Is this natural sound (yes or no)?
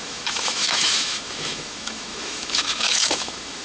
no